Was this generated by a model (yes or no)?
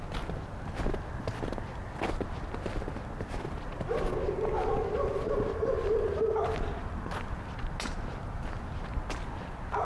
no